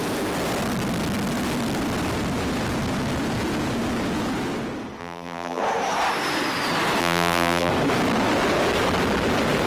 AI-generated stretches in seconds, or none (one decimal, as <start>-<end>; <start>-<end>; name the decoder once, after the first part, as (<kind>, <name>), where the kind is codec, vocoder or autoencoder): 5.0-5.6 (vocoder, BigVGAN v2); 7.0-7.7